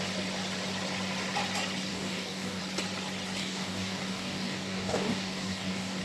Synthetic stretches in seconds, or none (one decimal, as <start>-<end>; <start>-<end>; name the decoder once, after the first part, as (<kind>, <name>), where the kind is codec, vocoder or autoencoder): 1.9-2.6 (codec, DAC); 3.4-6.0